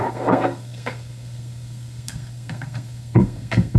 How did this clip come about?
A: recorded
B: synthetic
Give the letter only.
B